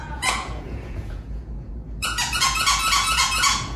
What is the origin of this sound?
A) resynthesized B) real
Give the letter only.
A